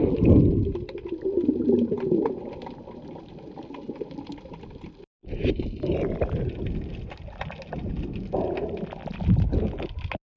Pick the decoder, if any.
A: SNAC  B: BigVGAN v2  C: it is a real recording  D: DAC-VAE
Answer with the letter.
C